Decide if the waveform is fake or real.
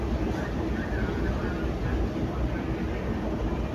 real